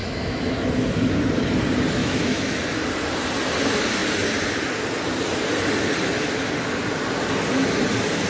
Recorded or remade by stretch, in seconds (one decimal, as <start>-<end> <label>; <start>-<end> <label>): 0.0-0.7 remade; 0.7-2.0 recorded; 2.0-2.6 remade; 2.6-8.3 recorded